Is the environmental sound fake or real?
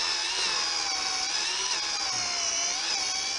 real